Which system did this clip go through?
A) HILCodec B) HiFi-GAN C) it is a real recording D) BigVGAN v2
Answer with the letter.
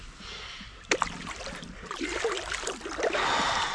C